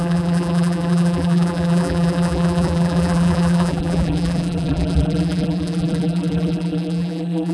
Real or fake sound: fake